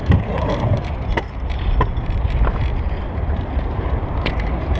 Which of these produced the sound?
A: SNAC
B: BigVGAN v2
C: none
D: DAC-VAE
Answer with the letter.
B